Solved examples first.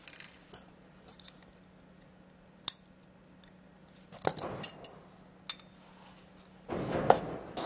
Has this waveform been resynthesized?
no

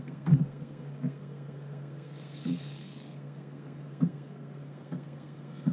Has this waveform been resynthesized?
yes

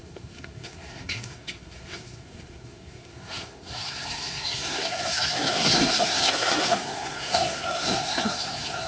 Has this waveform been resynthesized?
yes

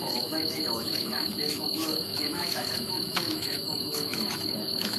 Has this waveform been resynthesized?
yes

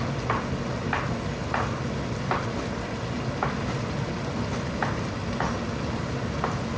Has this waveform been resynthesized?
no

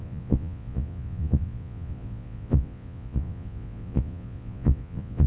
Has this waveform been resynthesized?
yes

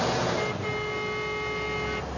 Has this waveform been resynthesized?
no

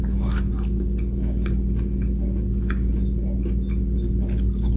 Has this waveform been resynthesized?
no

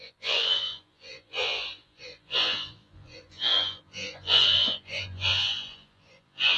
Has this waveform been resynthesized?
yes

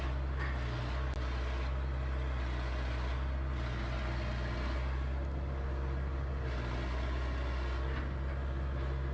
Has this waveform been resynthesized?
no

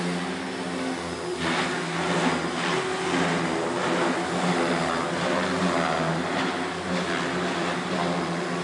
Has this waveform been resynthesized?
no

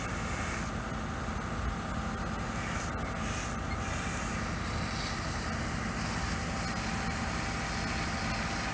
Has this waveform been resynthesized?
no